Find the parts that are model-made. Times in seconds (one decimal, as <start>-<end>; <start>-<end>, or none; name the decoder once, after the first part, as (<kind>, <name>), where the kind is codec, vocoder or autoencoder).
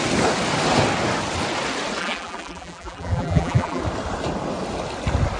2.0-3.8 (vocoder, BigVGAN v2)